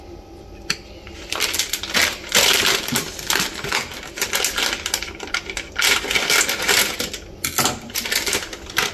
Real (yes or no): yes